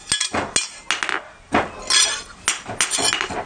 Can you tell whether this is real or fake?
real